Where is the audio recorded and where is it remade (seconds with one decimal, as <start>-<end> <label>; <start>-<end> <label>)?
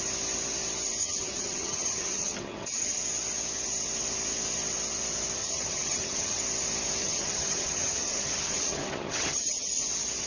0.0-1.0 recorded; 1.0-3.0 remade; 3.0-5.4 recorded; 5.4-6.4 remade; 6.4-7.0 recorded; 7.0-9.8 remade; 9.8-10.3 recorded